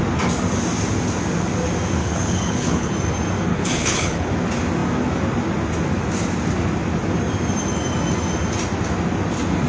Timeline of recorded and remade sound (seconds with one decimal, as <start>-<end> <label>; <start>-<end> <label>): 0.0-2.0 recorded; 2.0-2.9 remade; 2.9-3.5 recorded; 3.5-4.3 remade; 4.3-9.7 recorded